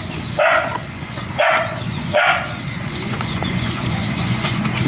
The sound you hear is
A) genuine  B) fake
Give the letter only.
B